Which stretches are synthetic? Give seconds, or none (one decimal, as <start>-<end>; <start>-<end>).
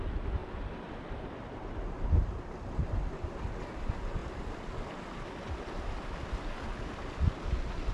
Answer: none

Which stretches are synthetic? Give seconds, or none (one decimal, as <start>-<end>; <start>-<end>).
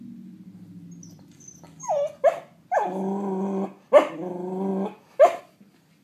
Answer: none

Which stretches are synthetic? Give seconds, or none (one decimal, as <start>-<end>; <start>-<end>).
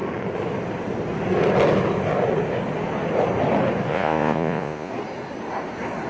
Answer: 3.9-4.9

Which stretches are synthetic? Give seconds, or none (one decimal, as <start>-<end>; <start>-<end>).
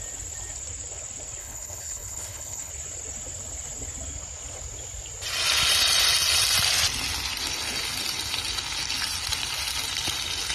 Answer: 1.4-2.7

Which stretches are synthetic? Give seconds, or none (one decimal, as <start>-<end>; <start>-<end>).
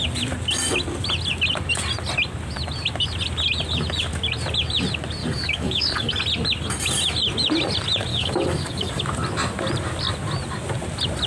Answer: 5.2-6.1; 8.1-9.0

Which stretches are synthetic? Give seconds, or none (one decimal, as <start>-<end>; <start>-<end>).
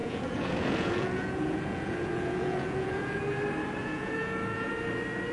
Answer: 0.0-3.2; 3.8-4.7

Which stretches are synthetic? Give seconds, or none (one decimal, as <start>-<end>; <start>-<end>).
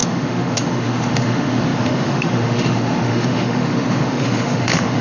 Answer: 0.0-5.0